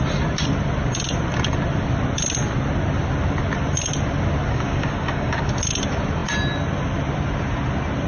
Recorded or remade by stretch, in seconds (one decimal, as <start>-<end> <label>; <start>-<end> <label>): 0.0-4.5 recorded; 4.5-5.5 remade; 5.5-8.1 recorded